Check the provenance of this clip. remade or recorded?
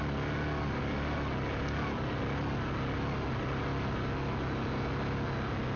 recorded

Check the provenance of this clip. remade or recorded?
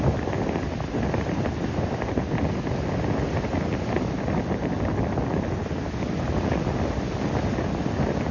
recorded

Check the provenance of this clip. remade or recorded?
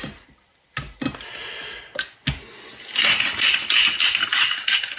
recorded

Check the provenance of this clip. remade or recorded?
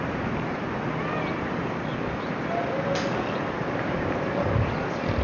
recorded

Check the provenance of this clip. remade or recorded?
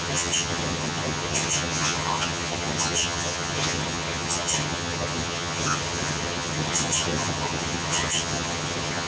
remade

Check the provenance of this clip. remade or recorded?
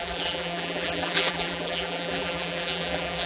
remade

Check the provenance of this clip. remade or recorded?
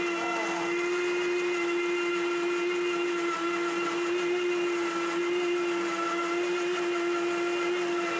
recorded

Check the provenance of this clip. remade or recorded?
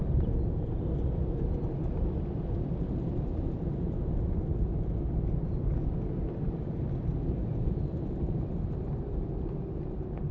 recorded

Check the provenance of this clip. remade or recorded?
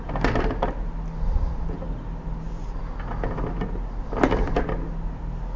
recorded